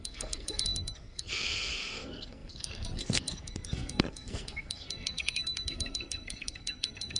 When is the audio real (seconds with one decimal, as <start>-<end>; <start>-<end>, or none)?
none